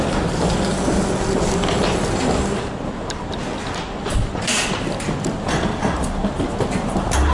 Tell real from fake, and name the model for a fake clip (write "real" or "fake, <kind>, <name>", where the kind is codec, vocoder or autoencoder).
real